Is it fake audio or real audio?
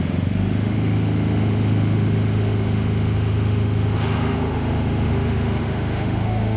fake